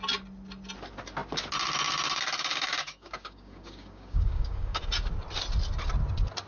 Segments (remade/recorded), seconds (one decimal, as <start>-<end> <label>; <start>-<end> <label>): 0.0-2.5 recorded; 2.5-4.8 remade; 4.8-6.5 recorded